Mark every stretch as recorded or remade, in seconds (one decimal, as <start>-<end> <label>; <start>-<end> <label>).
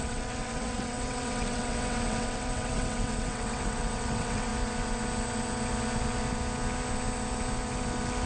0.0-4.5 remade; 4.5-8.3 recorded